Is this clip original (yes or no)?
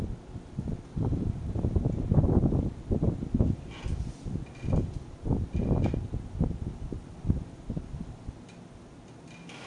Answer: yes